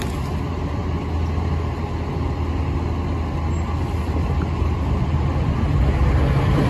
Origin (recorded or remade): recorded